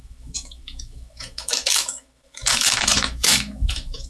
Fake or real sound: fake